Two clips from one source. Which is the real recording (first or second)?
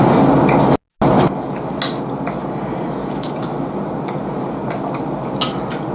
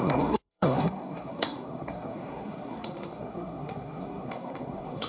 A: first